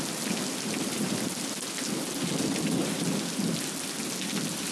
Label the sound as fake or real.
real